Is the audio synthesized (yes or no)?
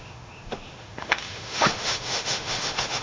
yes